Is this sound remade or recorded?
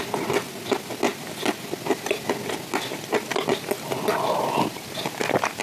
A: recorded